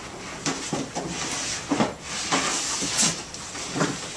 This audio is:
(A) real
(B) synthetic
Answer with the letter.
A